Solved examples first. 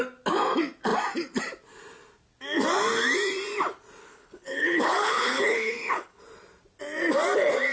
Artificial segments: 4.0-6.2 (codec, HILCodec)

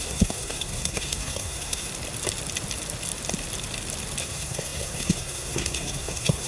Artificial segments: 0.0-1.9 (codec, SNAC); 4.2-6.5

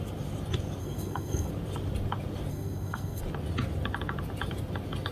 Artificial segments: 0.8-1.5 (codec, SNAC); 2.5-3.2

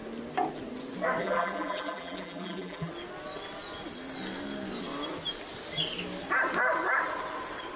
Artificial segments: 1.2-2.9 (vocoder, BigVGAN v2)